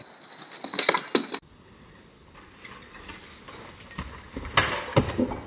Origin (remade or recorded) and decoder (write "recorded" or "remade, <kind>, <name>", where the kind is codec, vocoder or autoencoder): recorded